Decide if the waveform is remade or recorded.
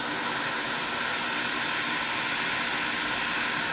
recorded